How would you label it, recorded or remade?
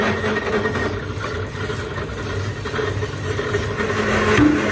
recorded